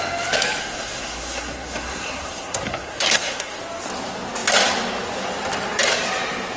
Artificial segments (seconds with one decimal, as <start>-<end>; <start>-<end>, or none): 0.6-3.6